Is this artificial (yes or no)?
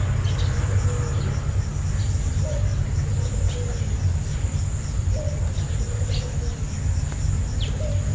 no